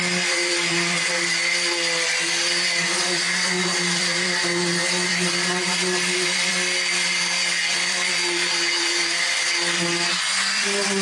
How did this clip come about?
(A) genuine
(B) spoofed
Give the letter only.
B